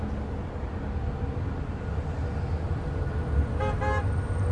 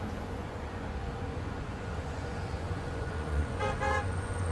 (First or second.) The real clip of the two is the first